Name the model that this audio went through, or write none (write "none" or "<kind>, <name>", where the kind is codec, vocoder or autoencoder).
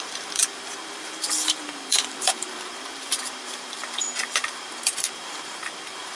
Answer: vocoder, BigVGAN v2